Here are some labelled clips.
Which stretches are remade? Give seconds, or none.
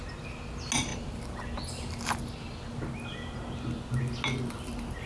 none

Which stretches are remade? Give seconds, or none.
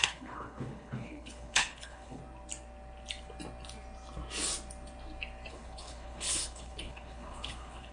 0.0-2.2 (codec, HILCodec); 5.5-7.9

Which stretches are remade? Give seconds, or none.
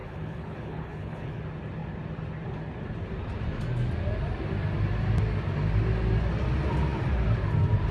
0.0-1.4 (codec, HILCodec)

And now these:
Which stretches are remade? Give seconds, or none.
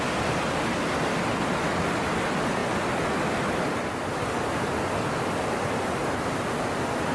none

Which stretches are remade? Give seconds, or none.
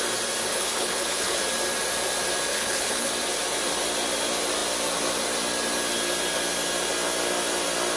0.5-1.4 (codec, HILCodec); 2.5-3.1